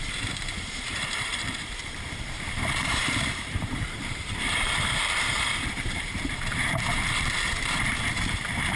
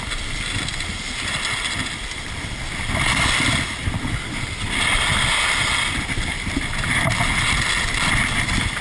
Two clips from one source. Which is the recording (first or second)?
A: second